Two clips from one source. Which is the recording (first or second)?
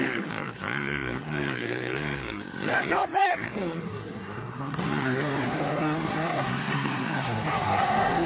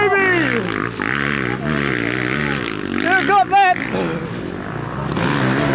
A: second